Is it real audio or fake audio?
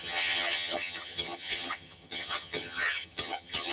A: fake